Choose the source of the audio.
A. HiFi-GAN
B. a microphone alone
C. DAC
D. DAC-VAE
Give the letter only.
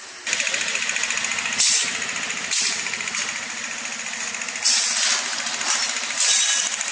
B